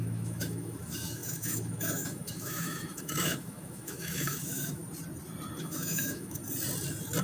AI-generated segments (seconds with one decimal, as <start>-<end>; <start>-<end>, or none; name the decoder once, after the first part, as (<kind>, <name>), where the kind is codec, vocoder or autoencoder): 0.0-4.8 (autoencoder, DAC-VAE); 5.6-6.4